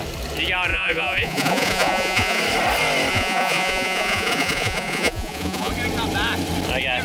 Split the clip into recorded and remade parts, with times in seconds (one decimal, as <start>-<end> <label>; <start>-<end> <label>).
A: 0.0-0.7 recorded; 0.7-2.4 remade; 2.4-3.1 recorded; 3.1-5.7 remade; 5.7-7.0 recorded